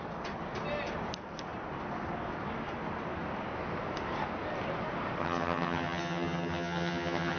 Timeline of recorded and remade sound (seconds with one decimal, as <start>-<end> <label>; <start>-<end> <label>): 0.0-5.2 recorded; 5.2-7.4 remade